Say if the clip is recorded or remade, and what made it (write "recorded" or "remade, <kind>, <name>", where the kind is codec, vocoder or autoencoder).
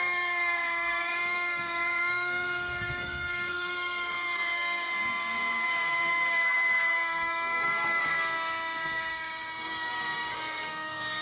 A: remade, codec, SNAC